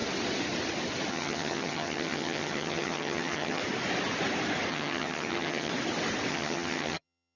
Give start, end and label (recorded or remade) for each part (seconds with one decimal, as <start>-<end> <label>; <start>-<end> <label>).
0.0-1.1 recorded; 1.1-3.6 remade; 3.6-4.7 recorded; 4.7-5.7 remade; 5.7-6.3 recorded; 6.3-7.4 remade